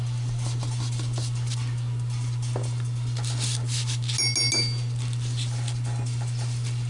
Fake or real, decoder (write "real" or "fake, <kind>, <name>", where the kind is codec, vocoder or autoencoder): real